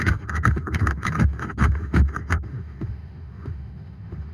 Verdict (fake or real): fake